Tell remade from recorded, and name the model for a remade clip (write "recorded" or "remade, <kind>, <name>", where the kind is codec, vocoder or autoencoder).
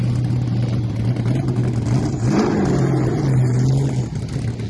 recorded